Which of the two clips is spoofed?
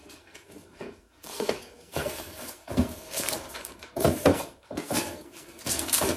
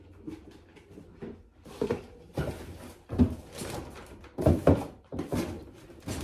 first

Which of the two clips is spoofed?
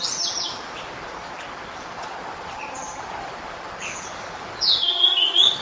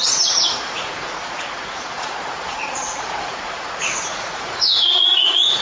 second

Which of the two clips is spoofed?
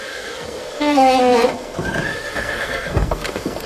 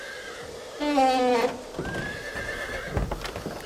first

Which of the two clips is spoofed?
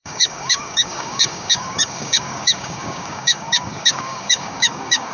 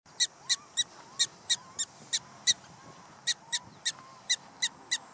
first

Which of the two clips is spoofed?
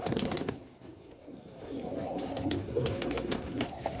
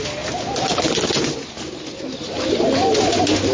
first